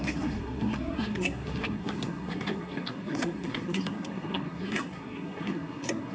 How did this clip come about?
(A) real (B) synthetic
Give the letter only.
B